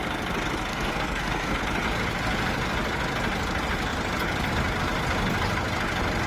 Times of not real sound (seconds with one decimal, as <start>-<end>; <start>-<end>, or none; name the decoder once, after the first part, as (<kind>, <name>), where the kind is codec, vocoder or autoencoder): 0.7-1.6 (codec, SNAC)